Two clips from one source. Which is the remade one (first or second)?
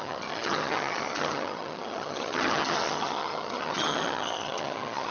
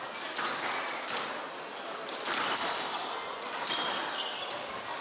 first